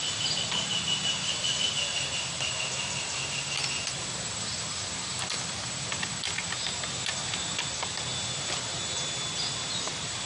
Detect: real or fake real